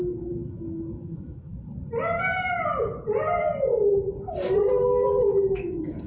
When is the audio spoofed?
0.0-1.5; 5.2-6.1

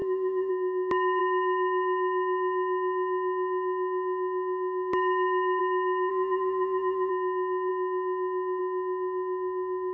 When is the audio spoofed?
0.0-0.5; 6.1-7.1

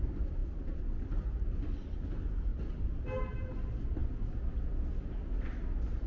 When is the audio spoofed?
none